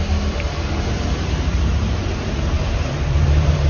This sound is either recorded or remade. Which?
remade